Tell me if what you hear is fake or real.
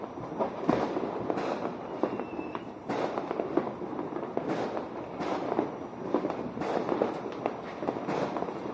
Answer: real